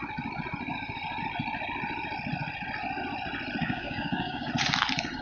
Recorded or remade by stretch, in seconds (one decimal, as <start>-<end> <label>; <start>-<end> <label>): 0.0-3.6 recorded; 3.6-4.5 remade; 4.5-5.2 recorded